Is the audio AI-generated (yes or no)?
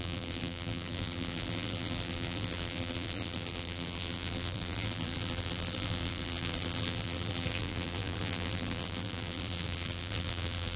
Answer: yes